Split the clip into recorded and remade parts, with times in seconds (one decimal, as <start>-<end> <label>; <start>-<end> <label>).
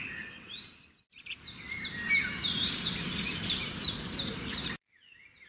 0.0-5.5 recorded